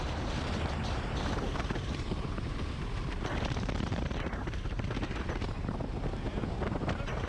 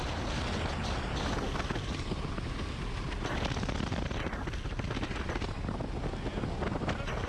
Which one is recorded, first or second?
second